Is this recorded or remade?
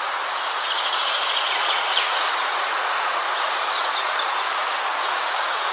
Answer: remade